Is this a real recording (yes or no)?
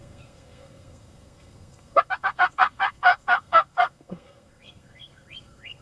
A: no